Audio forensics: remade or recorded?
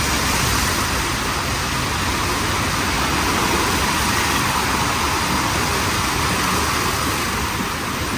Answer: recorded